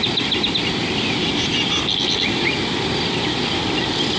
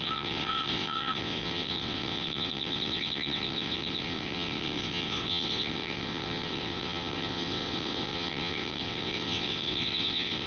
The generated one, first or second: second